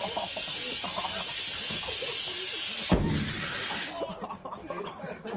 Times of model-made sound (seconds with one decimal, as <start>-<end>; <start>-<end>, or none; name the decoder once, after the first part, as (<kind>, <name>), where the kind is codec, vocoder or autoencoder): 4.6-5.4 (codec, DAC)